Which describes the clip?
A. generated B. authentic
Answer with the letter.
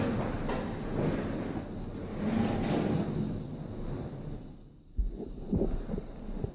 B